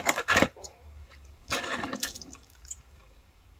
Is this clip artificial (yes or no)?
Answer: yes